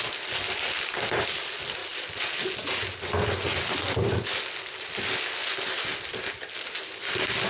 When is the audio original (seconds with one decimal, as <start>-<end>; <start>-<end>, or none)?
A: 0.0-7.5